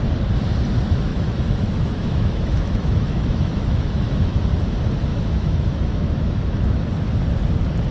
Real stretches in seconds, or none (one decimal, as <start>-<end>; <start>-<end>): 0.0-1.1; 4.4-5.1; 6.8-7.9